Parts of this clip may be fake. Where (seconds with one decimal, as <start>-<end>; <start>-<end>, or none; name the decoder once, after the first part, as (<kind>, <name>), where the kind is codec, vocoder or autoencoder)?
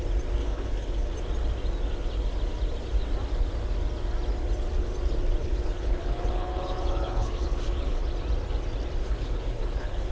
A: 0.4-1.1 (codec, HILCodec); 5.4-8.1; 9.0-10.1